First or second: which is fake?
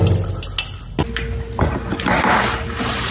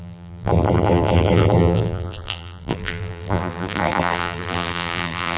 second